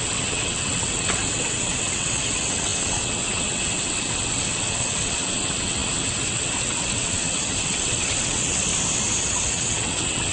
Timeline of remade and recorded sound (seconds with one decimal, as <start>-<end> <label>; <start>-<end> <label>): 0.0-8.7 remade; 8.7-9.2 recorded; 9.2-10.3 remade